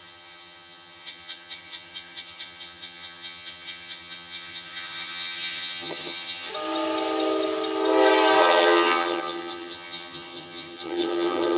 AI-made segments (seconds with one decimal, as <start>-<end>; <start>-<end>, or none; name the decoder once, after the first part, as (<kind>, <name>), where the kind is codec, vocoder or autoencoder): 0.0-6.5 (vocoder, HiFi-GAN); 8.4-11.6